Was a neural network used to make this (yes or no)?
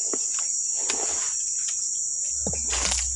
no